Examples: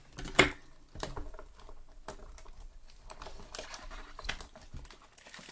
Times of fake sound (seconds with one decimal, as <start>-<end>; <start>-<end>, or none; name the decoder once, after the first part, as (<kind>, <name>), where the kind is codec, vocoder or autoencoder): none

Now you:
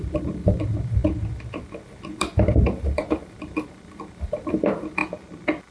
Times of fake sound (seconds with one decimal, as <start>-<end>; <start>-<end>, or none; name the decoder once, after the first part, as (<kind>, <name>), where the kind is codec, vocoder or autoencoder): 0.0-5.0 (vocoder, BigVGAN v2)

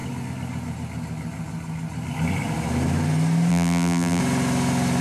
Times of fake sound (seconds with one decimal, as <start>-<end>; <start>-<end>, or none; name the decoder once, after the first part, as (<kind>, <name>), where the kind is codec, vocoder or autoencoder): 3.5-4.2 (vocoder, BigVGAN v2)